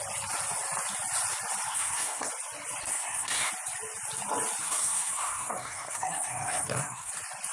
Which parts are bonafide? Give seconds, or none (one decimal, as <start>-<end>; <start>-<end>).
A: 0.0-1.7; 2.3-2.9; 3.5-4.6; 7.1-7.5